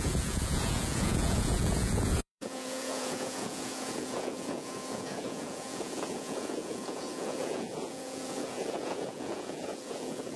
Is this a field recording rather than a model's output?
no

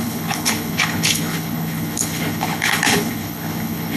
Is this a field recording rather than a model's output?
no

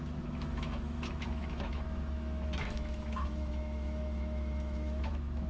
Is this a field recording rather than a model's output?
no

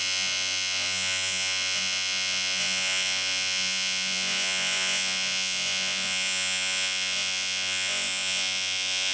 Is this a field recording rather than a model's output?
no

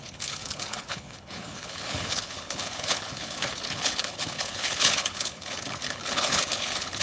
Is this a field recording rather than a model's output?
no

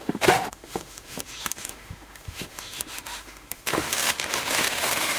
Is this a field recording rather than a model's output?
no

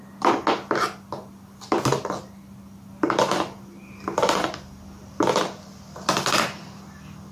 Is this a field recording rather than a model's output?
yes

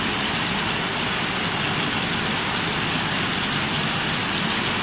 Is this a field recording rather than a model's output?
yes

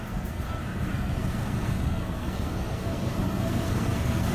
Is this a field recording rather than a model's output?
no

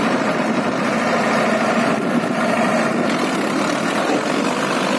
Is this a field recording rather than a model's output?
no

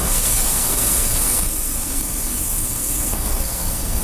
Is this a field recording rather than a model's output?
no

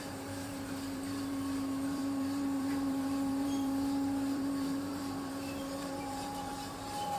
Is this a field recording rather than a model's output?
no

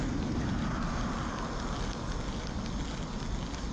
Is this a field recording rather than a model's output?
yes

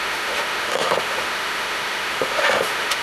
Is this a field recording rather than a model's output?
no